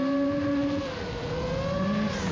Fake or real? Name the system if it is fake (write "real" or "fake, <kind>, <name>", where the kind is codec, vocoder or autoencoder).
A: real